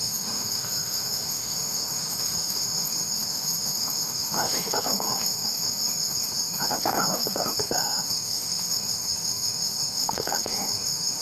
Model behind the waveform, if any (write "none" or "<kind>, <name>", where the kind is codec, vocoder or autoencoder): autoencoder, DAC-VAE